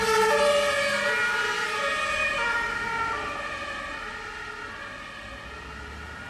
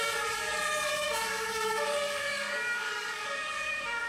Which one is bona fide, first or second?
first